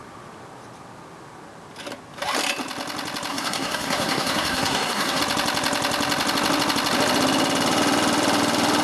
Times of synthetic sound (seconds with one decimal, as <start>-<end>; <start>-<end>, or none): 3.3-5.2